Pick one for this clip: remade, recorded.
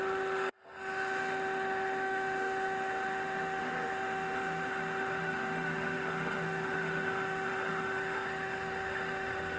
remade